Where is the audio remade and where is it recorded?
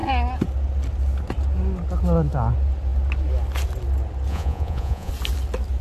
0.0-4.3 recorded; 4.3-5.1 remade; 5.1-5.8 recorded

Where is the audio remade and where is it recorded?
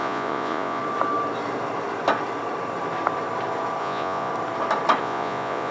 0.0-0.8 remade; 0.8-3.8 recorded; 3.8-4.3 remade; 4.3-5.0 recorded; 5.0-5.7 remade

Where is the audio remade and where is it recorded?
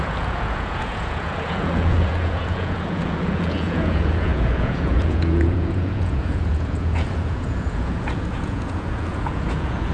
0.0-9.9 remade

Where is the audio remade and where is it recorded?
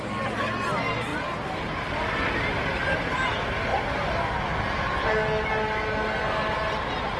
0.0-7.2 recorded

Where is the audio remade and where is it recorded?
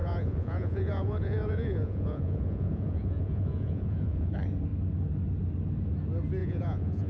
0.0-4.3 remade; 4.3-6.4 recorded; 6.4-7.1 remade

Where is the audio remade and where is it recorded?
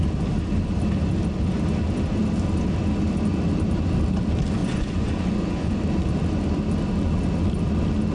0.0-4.6 recorded; 4.6-5.7 remade; 5.7-8.1 recorded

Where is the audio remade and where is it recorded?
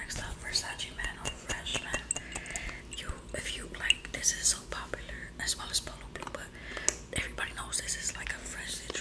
0.0-1.7 remade; 1.7-5.6 recorded; 5.6-6.6 remade; 6.6-9.0 recorded